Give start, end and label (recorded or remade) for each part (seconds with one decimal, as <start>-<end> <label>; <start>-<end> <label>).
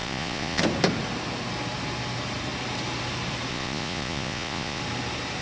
0.0-0.6 remade; 0.6-3.5 recorded; 3.5-4.8 remade; 4.8-5.4 recorded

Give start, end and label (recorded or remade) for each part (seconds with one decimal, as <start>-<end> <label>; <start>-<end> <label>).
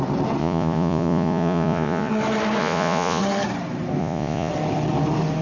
0.0-0.4 recorded; 0.4-2.1 remade; 2.1-2.6 recorded; 2.6-3.2 remade; 3.2-4.0 recorded; 4.0-4.5 remade; 4.5-5.4 recorded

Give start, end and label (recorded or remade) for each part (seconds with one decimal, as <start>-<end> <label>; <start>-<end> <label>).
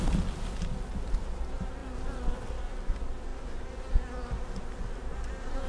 0.0-5.7 recorded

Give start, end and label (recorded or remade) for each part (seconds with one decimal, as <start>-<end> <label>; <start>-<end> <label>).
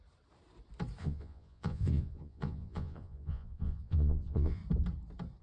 0.0-1.0 recorded; 1.0-4.6 remade; 4.6-5.4 recorded